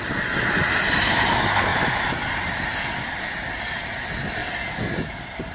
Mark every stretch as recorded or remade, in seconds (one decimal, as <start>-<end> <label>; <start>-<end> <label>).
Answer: 0.0-4.4 recorded; 4.4-5.0 remade; 5.0-5.5 recorded